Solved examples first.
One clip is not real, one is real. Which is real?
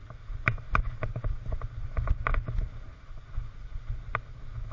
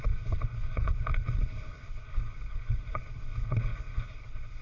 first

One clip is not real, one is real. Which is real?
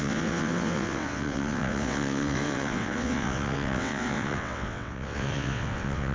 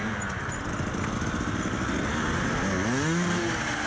second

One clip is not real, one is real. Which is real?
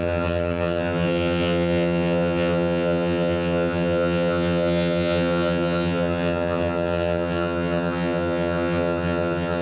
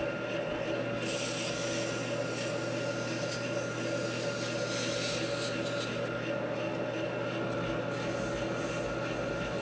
second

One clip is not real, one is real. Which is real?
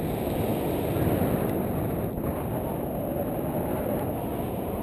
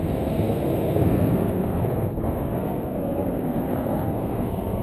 first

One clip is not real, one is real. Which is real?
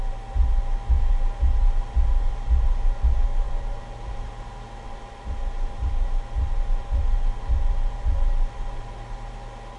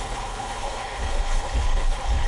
first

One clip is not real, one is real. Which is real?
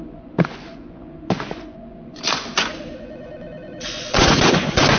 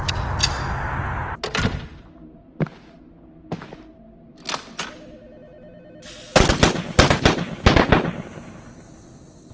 second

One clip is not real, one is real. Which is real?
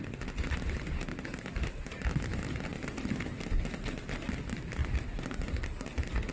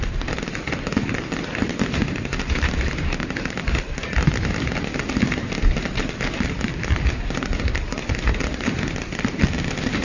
first